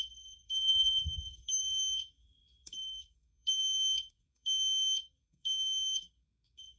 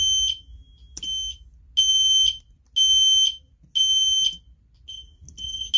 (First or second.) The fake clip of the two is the first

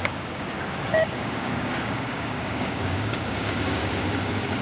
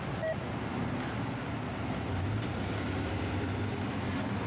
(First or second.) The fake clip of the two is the first